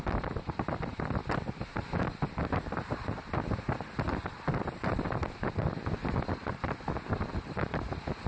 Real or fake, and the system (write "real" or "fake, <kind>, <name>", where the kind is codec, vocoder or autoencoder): fake, vocoder, BigVGAN v2